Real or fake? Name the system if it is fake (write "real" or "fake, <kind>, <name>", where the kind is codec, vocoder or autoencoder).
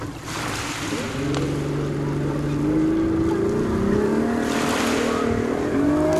real